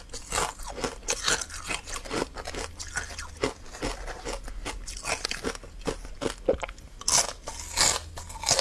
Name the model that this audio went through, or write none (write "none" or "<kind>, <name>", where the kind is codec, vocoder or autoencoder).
none